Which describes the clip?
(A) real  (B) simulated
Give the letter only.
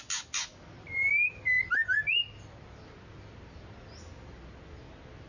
A